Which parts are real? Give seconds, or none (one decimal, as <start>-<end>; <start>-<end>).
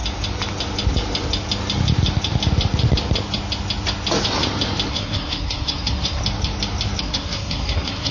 0.0-4.9; 6.2-7.0